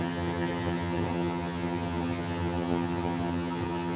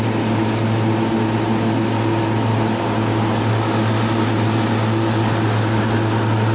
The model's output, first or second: first